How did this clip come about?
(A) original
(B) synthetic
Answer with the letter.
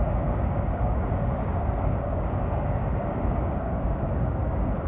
B